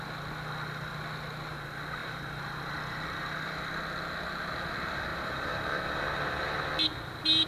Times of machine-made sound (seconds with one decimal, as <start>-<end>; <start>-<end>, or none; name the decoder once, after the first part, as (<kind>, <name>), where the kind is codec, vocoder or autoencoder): 2.0-2.7 (vocoder, BigVGAN v2); 5.1-6.7